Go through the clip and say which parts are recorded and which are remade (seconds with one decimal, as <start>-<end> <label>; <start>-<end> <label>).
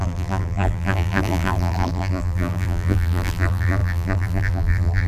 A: 0.0-5.1 remade